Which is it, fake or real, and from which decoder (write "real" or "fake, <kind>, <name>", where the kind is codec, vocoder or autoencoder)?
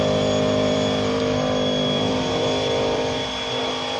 fake, vocoder, BigVGAN v2